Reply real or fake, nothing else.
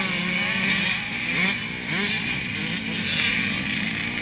real